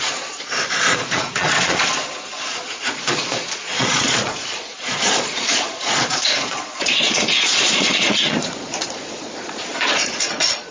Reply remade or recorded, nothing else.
remade